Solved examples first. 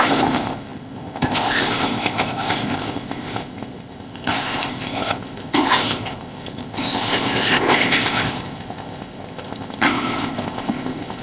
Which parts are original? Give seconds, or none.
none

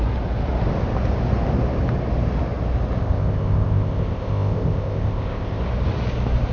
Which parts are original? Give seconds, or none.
0.0-3.0; 5.6-6.5

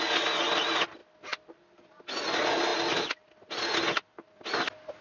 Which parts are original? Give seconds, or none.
0.0-5.0

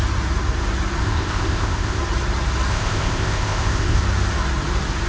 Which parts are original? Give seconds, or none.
0.0-1.0; 2.0-2.7; 4.0-5.1

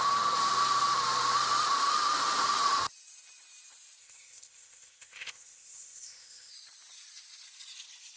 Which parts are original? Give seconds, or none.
0.0-4.0; 6.5-8.2

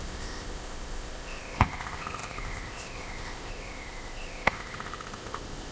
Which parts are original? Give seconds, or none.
none

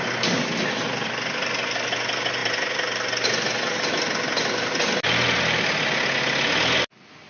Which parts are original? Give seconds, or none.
0.0-7.3